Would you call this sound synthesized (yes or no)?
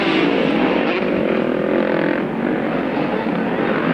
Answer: no